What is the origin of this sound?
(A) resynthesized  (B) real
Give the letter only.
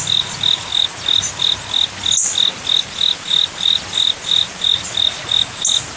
B